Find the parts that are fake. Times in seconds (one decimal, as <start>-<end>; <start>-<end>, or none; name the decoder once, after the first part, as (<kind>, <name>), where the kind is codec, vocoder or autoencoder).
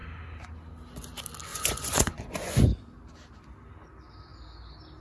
1.5-2.6 (vocoder, Vocos)